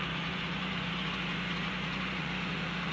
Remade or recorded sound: remade